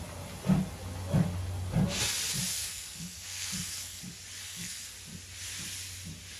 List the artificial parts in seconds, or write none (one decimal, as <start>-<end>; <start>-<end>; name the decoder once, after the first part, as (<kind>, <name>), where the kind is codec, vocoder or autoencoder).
2.5-4.0 (codec, SNAC); 4.4-4.9